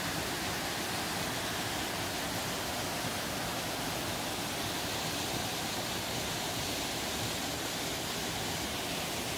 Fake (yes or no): no